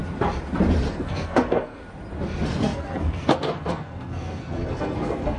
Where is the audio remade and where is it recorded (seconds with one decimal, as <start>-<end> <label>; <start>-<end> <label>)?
0.0-0.9 recorded; 0.9-1.8 remade; 1.8-2.6 recorded; 2.6-5.4 remade